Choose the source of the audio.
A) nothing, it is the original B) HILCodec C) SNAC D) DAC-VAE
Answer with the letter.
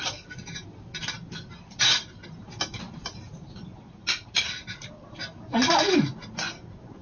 A